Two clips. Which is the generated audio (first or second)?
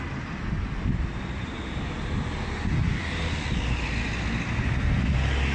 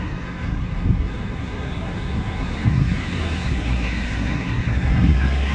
second